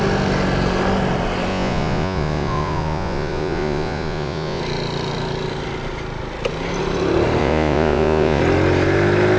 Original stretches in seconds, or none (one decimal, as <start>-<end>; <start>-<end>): 0.0-1.5; 4.6-7.4; 8.4-9.4